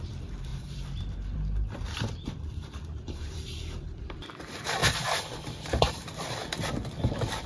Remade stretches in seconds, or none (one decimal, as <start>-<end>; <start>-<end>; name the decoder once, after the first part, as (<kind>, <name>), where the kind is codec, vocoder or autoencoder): 0.0-4.8 (vocoder, BigVGAN v2); 5.6-7.5